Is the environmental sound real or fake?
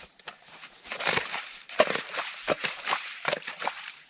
fake